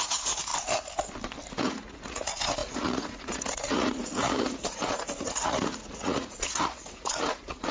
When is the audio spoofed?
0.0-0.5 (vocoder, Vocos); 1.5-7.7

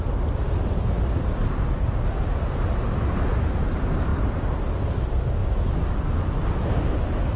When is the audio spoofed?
none